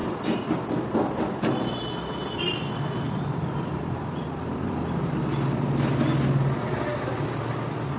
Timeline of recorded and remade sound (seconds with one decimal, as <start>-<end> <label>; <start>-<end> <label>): 0.0-0.5 remade; 0.5-2.2 recorded; 2.2-4.8 remade; 4.8-8.0 recorded